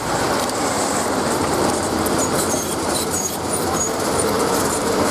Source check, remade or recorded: remade